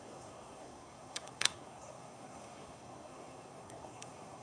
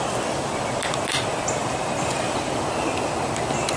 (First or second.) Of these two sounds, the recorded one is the second